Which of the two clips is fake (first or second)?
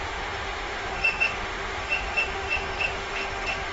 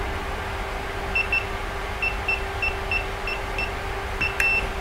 first